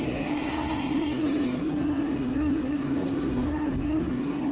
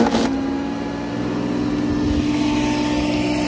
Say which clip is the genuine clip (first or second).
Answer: second